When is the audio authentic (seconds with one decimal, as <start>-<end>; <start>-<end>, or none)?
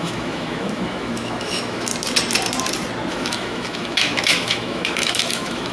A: 1.9-3.1